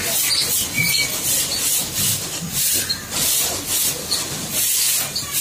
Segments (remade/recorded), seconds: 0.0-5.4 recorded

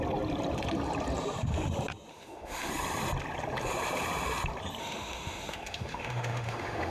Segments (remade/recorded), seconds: 0.0-2.1 recorded; 2.1-2.7 remade; 2.7-4.8 recorded; 4.8-6.9 remade

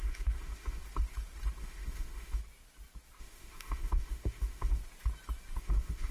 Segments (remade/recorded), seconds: 0.0-0.8 remade; 0.8-1.6 recorded; 1.6-2.4 remade; 2.4-3.2 recorded; 3.2-4.8 remade; 4.8-5.6 recorded; 5.6-6.1 remade

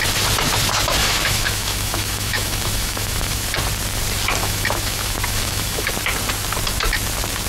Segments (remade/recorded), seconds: 0.0-1.0 recorded; 1.0-3.5 remade; 3.5-4.4 recorded; 4.4-5.9 remade; 5.9-7.5 recorded

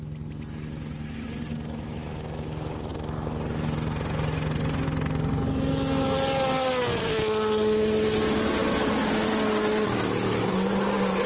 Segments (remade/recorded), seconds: 0.0-11.3 recorded

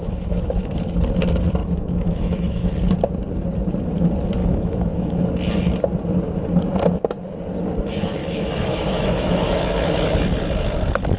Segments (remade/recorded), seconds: 0.0-0.7 remade; 0.7-1.6 recorded; 1.6-2.7 remade; 2.7-4.4 recorded; 4.4-5.2 remade; 5.2-8.2 recorded; 8.2-9.6 remade; 9.6-11.2 recorded

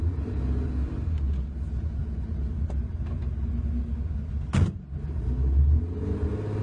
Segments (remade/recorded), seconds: 0.0-6.6 recorded